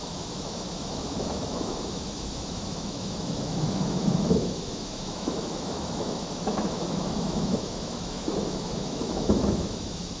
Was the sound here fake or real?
fake